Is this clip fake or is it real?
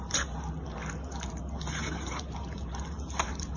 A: fake